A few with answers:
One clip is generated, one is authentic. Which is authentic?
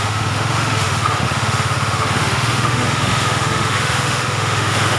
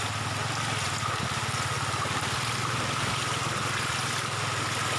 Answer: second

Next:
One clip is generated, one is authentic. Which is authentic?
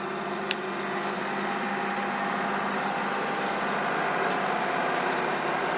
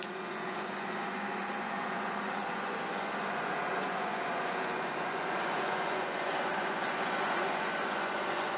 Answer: first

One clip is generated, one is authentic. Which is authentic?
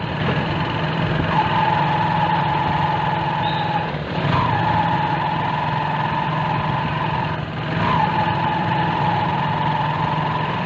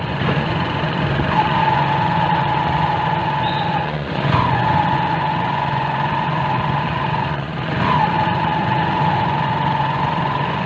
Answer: first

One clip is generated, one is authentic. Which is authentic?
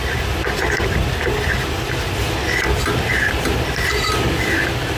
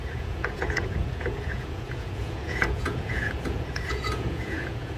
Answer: first